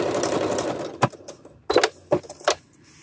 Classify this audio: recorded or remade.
recorded